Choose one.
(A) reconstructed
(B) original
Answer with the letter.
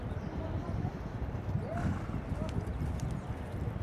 B